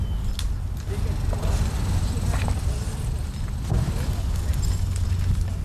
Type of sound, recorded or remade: recorded